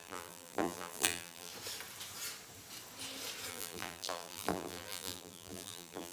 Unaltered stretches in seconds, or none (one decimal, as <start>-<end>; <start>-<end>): 1.5-3.5